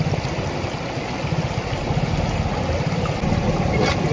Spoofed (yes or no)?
no